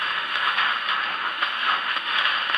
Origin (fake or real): fake